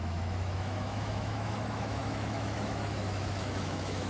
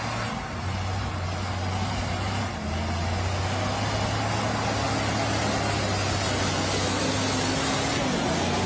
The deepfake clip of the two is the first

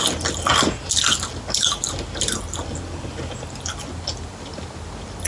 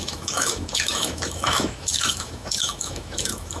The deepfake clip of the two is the second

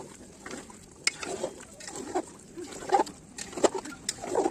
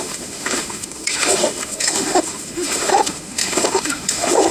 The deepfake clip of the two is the second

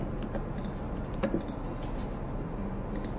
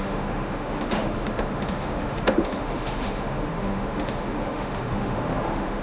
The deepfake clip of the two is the second